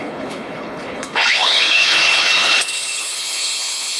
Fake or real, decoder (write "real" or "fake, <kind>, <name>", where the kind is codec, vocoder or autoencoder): fake, codec, HILCodec